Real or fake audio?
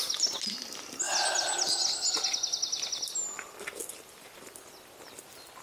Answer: real